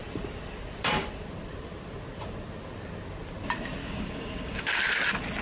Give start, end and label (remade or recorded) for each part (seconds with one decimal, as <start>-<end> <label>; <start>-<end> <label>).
0.0-3.8 recorded; 3.8-4.8 remade; 4.8-5.4 recorded